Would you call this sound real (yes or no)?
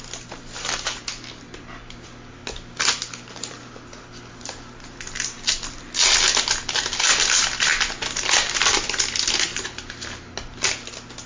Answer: yes